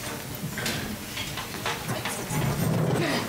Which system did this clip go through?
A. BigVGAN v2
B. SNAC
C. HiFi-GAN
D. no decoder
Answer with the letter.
D